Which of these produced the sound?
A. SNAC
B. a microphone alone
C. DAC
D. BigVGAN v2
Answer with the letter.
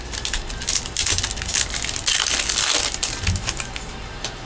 B